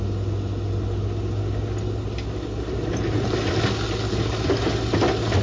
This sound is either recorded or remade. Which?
recorded